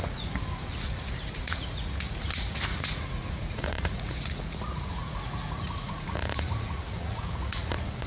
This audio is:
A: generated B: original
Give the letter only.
A